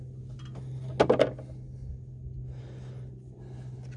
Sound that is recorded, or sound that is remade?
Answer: recorded